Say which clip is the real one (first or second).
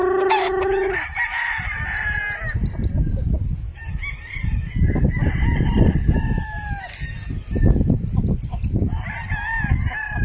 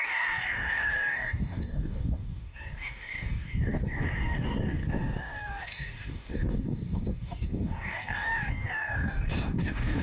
first